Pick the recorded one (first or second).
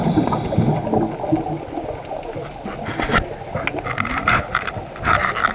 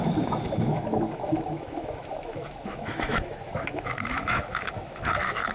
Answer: first